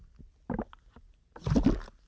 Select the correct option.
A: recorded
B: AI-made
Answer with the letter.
A